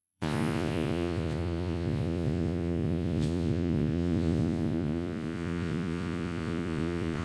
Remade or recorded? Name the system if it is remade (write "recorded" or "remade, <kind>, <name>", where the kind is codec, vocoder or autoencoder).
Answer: remade, vocoder, Vocos